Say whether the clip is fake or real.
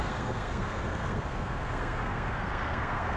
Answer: fake